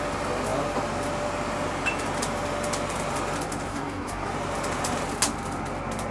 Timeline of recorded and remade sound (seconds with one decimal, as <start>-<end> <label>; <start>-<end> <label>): 0.0-3.7 recorded; 3.7-4.3 remade; 4.3-6.1 recorded